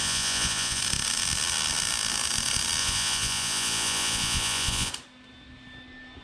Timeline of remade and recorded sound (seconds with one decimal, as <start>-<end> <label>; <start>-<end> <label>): 0.0-0.8 remade; 0.8-2.8 recorded; 2.8-4.9 remade; 4.9-6.2 recorded